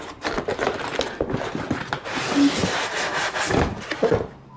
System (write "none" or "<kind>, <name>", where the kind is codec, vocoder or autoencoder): none